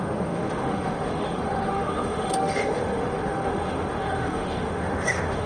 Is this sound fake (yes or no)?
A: yes